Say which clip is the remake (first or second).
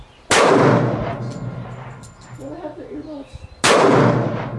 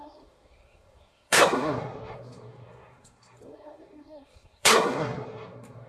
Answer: second